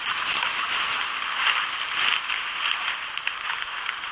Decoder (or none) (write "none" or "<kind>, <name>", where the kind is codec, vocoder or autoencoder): none